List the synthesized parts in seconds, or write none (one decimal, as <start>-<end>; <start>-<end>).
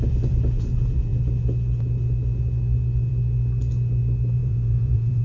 4.4-5.2